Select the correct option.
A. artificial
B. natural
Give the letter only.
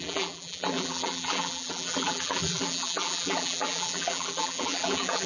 A